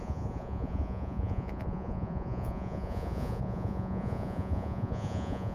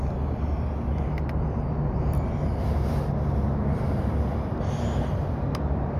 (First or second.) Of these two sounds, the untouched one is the second